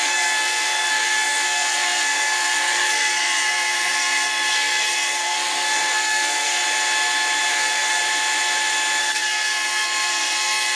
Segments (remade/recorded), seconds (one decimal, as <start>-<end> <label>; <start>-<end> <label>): 0.0-6.6 remade; 6.6-7.5 recorded; 7.5-8.0 remade; 8.0-9.0 recorded; 9.0-10.8 remade